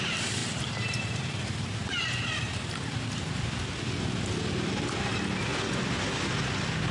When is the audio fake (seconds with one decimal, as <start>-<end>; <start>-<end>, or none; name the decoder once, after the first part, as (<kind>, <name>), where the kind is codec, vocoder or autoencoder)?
0.4-3.4 (vocoder, BigVGAN v2)